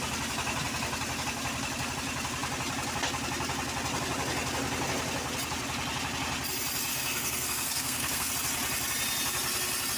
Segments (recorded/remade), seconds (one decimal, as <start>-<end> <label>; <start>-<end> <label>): 0.0-6.9 recorded; 6.9-8.3 remade; 8.3-10.0 recorded